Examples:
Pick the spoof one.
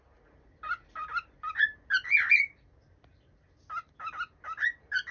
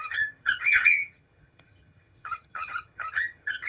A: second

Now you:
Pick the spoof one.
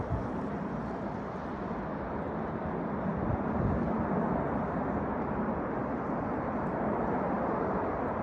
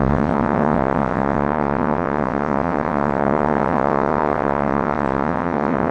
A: second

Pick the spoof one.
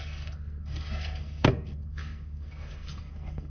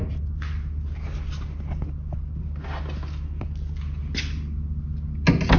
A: first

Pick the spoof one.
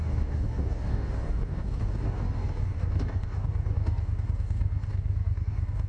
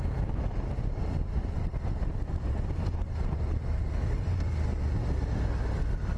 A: first